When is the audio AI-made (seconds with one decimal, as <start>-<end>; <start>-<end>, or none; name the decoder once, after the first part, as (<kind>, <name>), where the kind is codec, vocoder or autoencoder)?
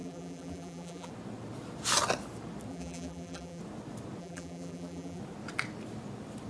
0.0-1.1 (vocoder, BigVGAN v2); 2.7-3.6; 4.2-5.2